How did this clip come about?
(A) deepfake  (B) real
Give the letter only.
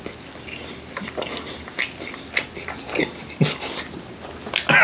B